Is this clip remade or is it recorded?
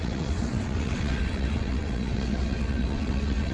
remade